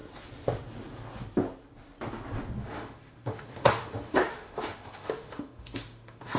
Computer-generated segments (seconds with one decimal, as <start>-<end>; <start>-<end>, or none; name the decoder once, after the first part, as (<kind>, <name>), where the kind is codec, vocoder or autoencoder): 2.6-6.4 (autoencoder, DAC-VAE)